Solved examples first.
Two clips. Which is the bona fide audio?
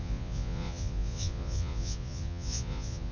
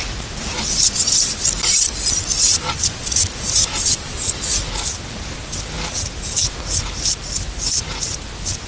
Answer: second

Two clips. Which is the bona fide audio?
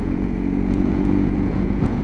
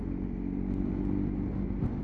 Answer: second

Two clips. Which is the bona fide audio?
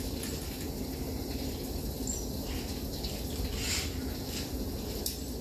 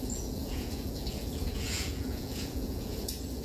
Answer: first